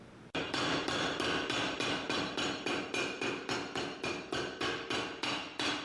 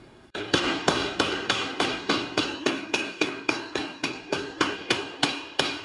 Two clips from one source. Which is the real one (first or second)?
first